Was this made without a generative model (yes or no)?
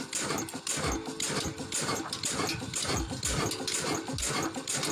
yes